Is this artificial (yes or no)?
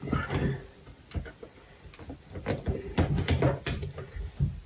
no